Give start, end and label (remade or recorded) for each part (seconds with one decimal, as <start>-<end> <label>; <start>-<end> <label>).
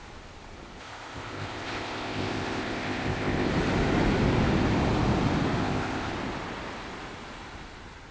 0.0-0.8 recorded; 0.8-3.5 remade; 3.5-5.6 recorded; 5.6-6.1 remade; 6.1-8.1 recorded